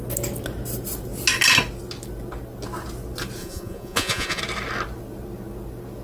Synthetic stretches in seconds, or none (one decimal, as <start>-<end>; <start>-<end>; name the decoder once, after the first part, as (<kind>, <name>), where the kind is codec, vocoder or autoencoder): 3.4-4.4 (vocoder, Vocos)